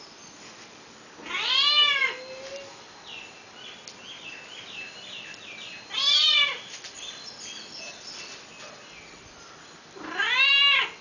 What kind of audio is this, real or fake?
real